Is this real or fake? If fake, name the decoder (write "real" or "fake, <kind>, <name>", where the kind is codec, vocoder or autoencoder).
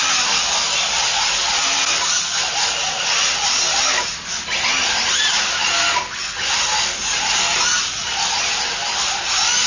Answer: real